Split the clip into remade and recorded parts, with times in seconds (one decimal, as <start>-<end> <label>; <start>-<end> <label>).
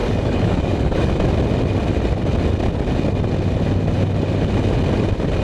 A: 0.0-1.1 remade; 1.1-5.4 recorded